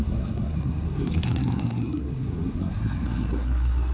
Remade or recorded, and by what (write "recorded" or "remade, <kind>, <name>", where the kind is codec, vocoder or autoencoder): remade, codec, SNAC